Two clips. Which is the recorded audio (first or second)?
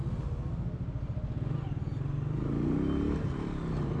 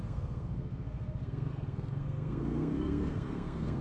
first